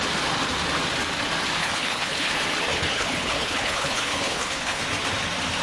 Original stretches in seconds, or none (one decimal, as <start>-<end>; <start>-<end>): 0.0-1.6; 2.3-2.7; 4.8-5.6